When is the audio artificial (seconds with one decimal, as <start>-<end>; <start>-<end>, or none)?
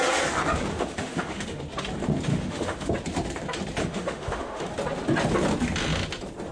0.7-1.6; 2.3-2.9; 3.8-4.7